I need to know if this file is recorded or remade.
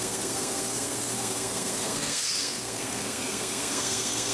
remade